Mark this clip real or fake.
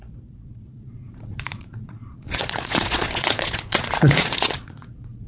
fake